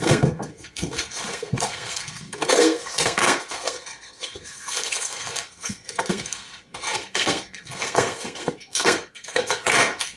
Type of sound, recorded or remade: remade